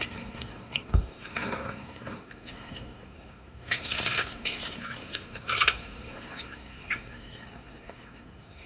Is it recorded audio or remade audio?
remade